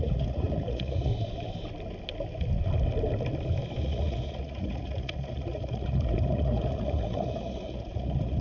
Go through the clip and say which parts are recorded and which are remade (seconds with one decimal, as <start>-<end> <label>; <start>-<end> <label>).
0.0-1.1 remade; 1.1-3.8 recorded; 3.8-8.4 remade